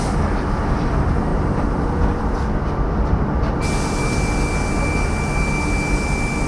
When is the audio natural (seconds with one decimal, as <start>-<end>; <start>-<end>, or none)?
0.0-1.3; 1.8-6.5